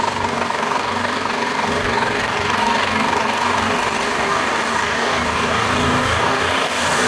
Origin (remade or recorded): remade